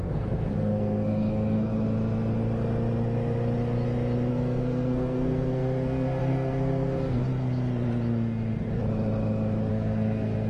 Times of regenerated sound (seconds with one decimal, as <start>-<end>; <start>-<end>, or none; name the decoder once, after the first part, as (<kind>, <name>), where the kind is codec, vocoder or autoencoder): 0.0-1.7 (codec, SNAC); 4.3-7.2; 9.7-10.5